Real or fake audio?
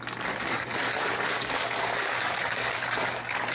fake